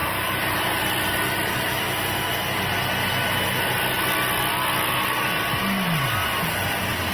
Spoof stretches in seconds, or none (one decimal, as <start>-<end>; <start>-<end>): 0.0-0.8

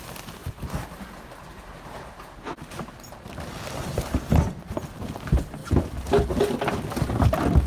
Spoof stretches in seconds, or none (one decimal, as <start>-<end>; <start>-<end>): none